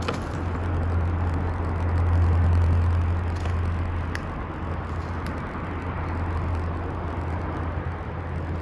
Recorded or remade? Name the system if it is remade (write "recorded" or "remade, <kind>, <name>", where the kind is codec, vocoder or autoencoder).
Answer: recorded